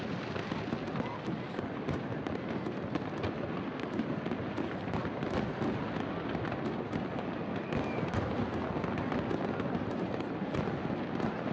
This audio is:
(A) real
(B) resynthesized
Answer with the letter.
A